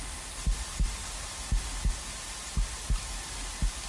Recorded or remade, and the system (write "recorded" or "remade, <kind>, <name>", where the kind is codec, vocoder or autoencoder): recorded